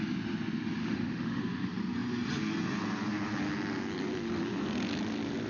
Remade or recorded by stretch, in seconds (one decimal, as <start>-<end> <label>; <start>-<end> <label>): 0.0-0.8 recorded; 0.8-1.4 remade; 1.4-5.5 recorded